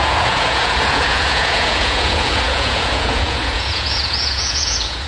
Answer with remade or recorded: remade